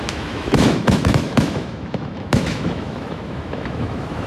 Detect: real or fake fake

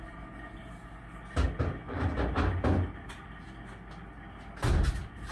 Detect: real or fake real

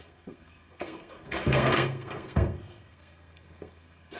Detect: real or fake fake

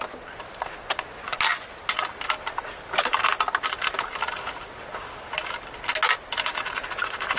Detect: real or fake real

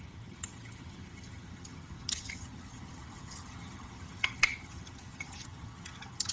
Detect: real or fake fake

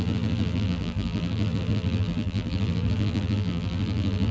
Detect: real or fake fake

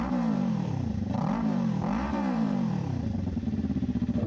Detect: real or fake fake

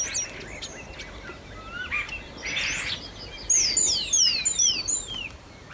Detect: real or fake real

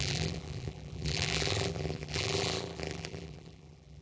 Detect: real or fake fake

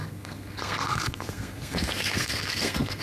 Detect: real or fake fake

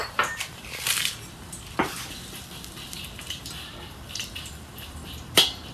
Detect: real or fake fake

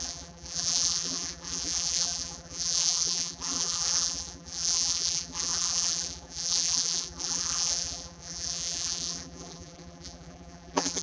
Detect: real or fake fake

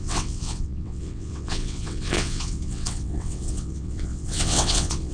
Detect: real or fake fake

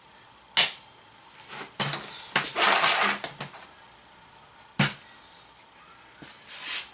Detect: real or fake real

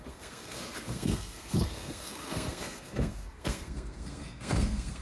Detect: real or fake fake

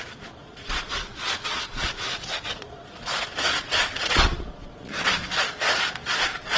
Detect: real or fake fake